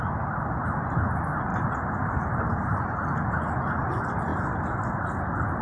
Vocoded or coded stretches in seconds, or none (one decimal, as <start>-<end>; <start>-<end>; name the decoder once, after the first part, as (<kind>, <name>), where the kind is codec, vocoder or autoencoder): none